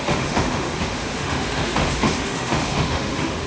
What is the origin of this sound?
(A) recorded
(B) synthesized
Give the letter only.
B